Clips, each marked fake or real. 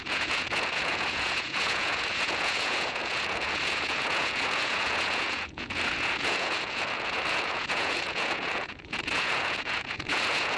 fake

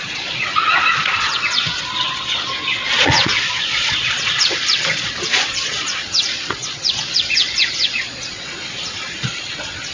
fake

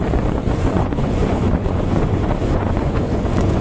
fake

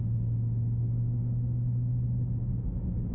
real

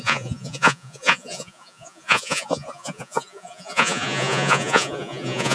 fake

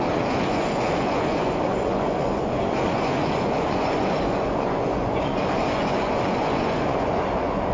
fake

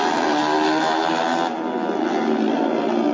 real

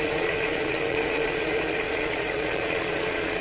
fake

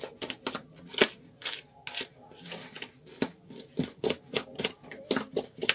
real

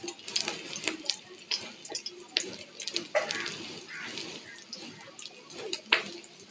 real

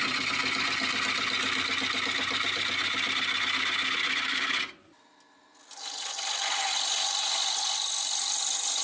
real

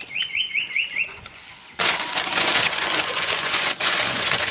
fake